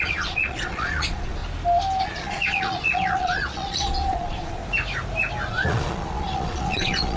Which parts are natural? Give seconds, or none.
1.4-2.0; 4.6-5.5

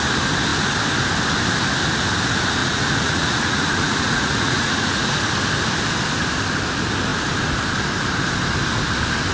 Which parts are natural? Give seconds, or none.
0.0-2.6; 5.2-9.3